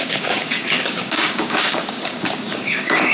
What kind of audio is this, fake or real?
fake